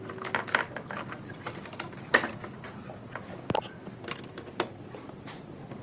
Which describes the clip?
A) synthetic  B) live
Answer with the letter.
B